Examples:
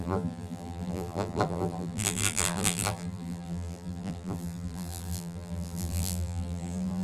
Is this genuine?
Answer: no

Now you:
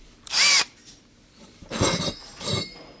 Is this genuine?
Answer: no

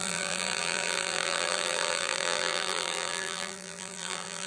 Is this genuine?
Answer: no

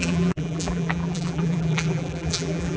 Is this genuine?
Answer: no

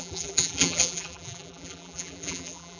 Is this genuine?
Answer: no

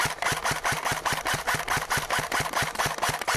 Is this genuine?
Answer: yes